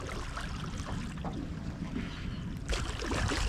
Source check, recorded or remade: recorded